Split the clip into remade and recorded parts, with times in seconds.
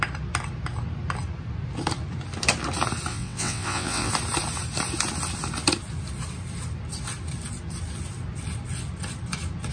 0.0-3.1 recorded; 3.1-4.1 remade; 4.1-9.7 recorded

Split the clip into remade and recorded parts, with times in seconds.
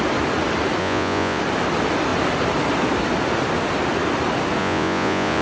0.0-0.8 recorded; 0.8-1.4 remade; 1.4-4.6 recorded; 4.6-5.4 remade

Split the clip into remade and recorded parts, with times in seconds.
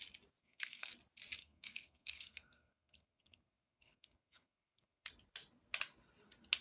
0.0-0.4 recorded; 0.4-0.9 remade; 0.9-1.4 recorded; 1.4-5.1 remade; 5.1-6.6 recorded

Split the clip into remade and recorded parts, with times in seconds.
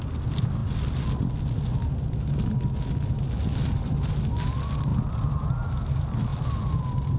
0.0-7.2 recorded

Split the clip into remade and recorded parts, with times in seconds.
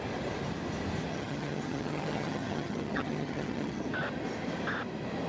0.0-1.1 recorded; 1.1-3.8 remade; 3.8-5.3 recorded